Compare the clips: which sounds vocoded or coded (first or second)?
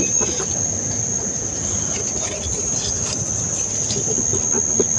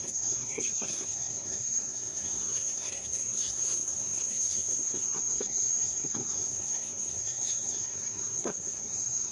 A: second